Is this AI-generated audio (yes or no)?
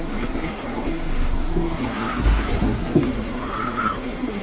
yes